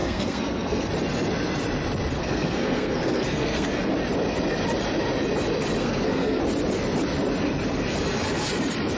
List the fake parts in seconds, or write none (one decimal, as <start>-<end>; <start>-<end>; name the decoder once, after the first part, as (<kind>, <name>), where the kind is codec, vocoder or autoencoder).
0.0-0.9 (codec, SNAC); 2.2-3.9; 5.8-6.4